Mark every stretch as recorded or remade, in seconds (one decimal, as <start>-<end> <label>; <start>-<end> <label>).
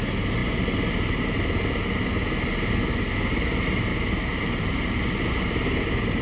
0.0-6.2 recorded